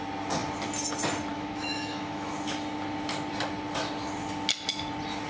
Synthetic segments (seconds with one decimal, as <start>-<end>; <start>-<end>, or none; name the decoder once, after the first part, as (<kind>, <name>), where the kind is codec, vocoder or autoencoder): 1.3-2.3 (autoencoder, DAC-VAE)